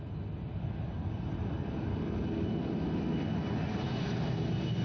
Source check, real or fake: real